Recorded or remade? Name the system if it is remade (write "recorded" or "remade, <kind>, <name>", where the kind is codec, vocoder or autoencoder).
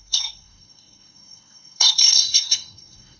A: remade, codec, SNAC